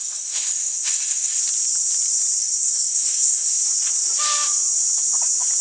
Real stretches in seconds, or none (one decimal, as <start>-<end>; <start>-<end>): 1.4-2.4; 3.5-5.6

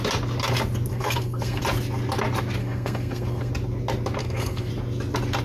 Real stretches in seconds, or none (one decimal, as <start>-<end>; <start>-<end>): 0.0-0.9; 1.6-2.6; 3.5-4.2; 4.7-5.4

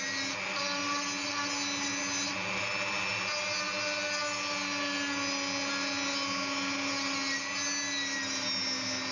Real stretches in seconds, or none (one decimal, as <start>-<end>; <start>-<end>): 0.0-9.1

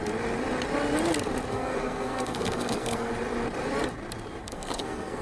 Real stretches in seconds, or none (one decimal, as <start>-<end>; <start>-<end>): 0.0-1.5; 3.1-4.4

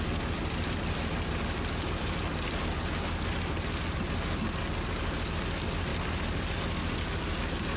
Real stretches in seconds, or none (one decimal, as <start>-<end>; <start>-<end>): 0.0-7.8